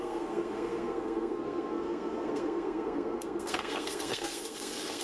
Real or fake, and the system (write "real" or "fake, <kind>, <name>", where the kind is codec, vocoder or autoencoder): fake, codec, SNAC